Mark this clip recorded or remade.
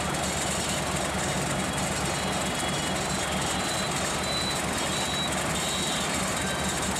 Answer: recorded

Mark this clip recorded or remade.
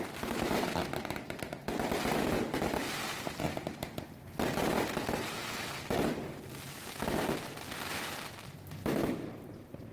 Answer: recorded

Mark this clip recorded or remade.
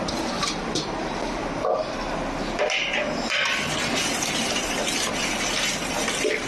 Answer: recorded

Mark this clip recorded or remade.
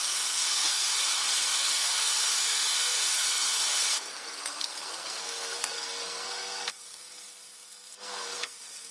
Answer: remade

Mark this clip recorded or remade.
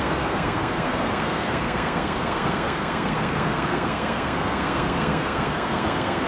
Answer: remade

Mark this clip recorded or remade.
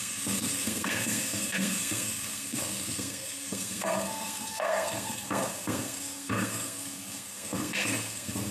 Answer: remade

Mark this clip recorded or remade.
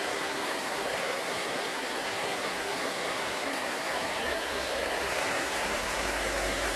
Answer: remade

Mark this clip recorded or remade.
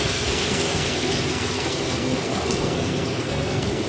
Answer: remade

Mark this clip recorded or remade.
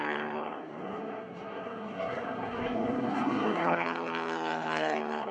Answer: remade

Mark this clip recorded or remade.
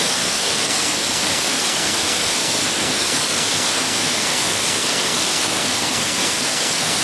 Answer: remade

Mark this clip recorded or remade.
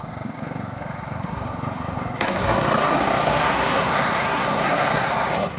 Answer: remade